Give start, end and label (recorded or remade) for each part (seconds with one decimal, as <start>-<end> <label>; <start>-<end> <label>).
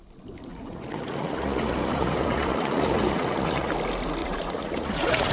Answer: 0.0-0.5 recorded; 0.5-3.7 remade; 3.7-4.2 recorded; 4.2-5.3 remade